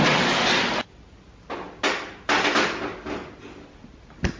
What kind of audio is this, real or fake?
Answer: real